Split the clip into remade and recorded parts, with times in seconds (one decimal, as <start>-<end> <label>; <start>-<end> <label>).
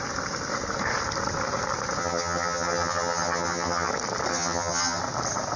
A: 0.0-2.0 recorded; 2.0-3.9 remade; 3.9-4.3 recorded; 4.3-5.0 remade; 5.0-5.6 recorded